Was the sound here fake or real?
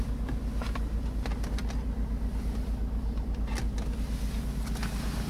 real